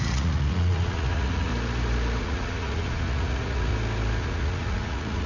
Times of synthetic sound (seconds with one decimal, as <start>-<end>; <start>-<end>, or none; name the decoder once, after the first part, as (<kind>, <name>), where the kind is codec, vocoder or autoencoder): 0.0-1.5 (vocoder, Vocos); 2.2-3.7; 4.2-5.3